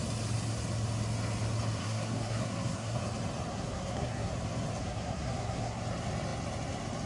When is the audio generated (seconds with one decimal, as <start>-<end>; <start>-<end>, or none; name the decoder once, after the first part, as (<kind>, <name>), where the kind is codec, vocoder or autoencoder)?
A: 1.8-3.0 (codec, SNAC); 3.5-4.3; 4.8-5.8